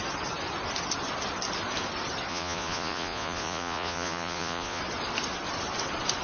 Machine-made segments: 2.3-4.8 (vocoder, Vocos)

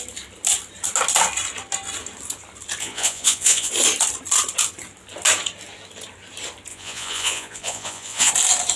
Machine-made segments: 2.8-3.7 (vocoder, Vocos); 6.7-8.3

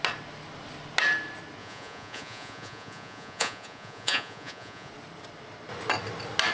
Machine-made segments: 1.6-4.9 (vocoder, Vocos)

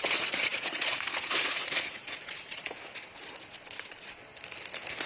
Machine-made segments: 0.0-4.2 (vocoder, Vocos)

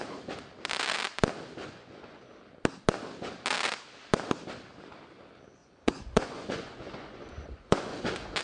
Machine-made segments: 1.6-2.2 (vocoder, Vocos); 5.6-8.4